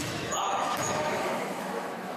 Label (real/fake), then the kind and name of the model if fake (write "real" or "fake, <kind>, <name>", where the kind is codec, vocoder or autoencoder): fake, autoencoder, DAC-VAE